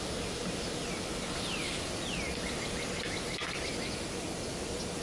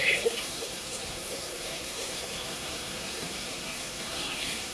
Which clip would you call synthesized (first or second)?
second